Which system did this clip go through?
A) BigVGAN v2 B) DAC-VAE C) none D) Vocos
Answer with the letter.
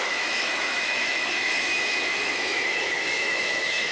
B